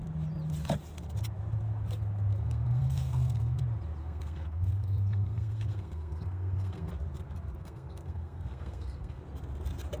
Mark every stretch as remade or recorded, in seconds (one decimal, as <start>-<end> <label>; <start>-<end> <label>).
0.0-2.3 recorded; 2.3-3.6 remade; 3.6-4.0 recorded; 4.0-6.9 remade; 6.9-7.6 recorded; 7.6-9.2 remade; 9.2-10.0 recorded